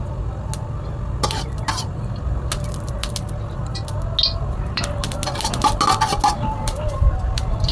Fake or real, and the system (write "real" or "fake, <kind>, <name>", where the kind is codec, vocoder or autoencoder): real